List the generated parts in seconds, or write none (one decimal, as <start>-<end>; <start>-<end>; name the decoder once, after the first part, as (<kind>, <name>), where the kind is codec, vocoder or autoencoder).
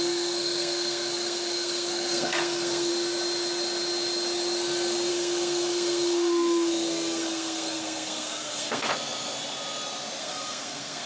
0.0-2.9 (codec, SNAC); 5.1-8.9; 10.2-11.1